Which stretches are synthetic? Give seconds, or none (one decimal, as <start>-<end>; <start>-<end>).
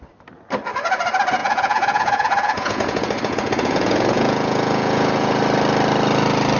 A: 1.4-5.4